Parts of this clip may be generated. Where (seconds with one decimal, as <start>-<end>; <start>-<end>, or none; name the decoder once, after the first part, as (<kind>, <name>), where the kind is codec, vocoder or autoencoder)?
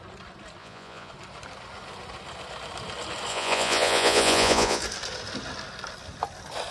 0.6-1.1 (vocoder, Vocos); 3.3-4.8